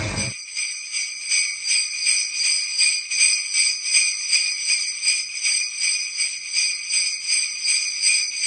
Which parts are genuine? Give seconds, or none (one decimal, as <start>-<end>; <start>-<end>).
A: 0.0-4.3; 5.5-8.5